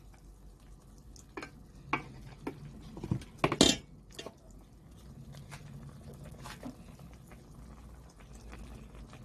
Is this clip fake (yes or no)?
no